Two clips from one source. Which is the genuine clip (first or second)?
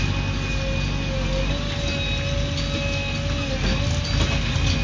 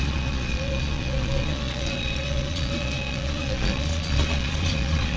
first